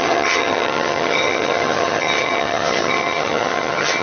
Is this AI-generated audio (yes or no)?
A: yes